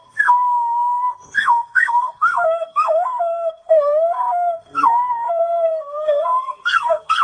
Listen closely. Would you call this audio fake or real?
fake